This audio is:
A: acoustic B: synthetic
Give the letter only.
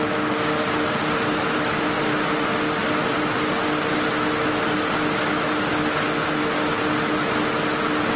A